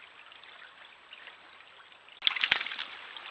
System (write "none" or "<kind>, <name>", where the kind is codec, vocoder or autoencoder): none